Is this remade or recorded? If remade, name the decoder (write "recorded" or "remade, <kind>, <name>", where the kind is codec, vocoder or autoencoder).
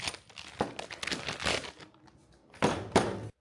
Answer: recorded